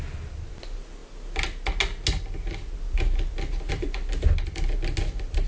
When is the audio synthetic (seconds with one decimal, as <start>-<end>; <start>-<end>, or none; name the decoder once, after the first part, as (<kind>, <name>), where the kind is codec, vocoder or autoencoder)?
none